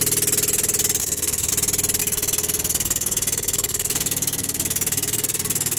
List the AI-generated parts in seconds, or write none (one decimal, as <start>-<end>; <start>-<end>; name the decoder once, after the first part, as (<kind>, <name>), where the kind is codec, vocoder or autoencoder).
1.0-1.5 (codec, SNAC); 2.0-5.8